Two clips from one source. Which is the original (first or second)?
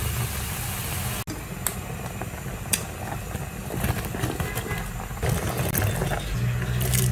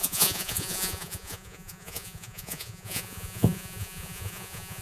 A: first